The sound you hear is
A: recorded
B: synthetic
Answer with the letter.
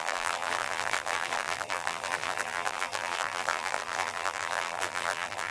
B